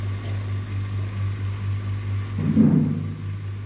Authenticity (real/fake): real